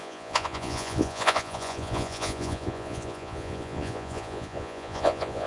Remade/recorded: remade